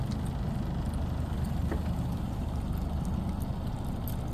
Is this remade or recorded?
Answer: recorded